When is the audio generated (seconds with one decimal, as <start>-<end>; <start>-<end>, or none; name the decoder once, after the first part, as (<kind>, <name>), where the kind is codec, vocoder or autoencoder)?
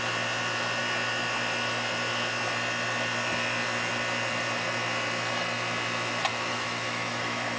6.3-7.6 (autoencoder, DAC-VAE)